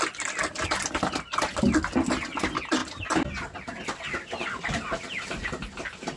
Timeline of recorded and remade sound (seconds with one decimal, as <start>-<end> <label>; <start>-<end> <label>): 0.0-6.2 recorded